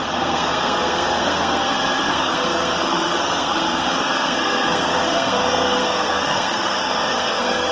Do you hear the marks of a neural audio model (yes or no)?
yes